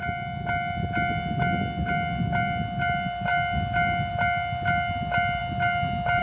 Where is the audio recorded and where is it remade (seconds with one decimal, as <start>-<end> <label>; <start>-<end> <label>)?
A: 0.0-6.2 recorded